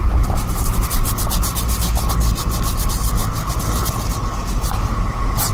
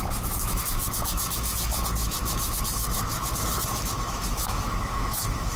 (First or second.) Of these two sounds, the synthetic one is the second